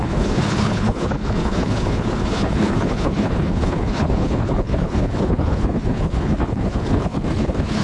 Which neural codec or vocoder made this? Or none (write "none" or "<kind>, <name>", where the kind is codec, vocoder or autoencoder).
codec, HILCodec